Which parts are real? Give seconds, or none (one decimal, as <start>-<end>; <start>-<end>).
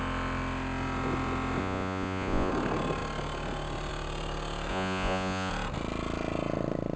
0.0-1.6; 2.5-4.7; 5.5-7.0